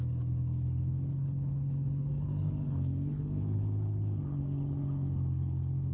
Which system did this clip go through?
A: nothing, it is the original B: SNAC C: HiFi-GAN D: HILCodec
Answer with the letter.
D